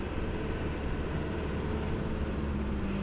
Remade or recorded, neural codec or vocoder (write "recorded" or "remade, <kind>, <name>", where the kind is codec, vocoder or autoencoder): remade, vocoder, BigVGAN v2